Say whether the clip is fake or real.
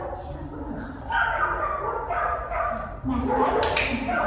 real